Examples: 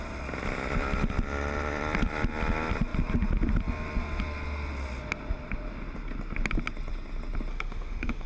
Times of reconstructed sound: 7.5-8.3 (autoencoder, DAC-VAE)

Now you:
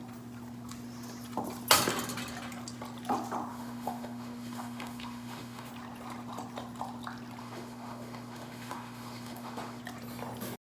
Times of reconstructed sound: 3.5-5.7 (autoencoder, DAC-VAE); 7.4-9.8

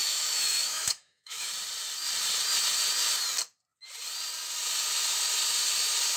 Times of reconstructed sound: 0.0-1.5 (autoencoder, DAC-VAE)

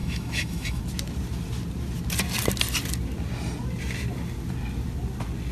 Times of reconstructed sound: 0.0-0.8 (autoencoder, DAC-VAE)